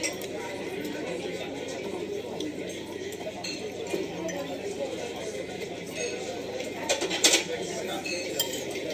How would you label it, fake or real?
real